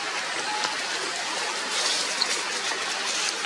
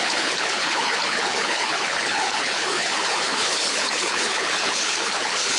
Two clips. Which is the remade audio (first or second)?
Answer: second